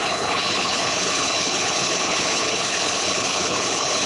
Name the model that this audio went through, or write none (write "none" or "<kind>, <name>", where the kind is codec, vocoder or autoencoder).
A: codec, HILCodec